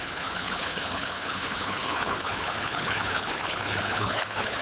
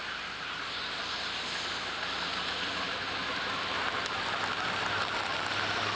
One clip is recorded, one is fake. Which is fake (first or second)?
first